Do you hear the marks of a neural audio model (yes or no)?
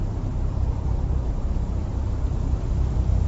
yes